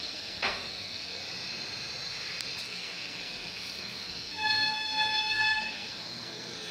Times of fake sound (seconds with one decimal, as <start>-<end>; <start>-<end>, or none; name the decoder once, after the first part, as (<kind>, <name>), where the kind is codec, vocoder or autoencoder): 0.0-1.2 (codec, SNAC); 2.6-6.7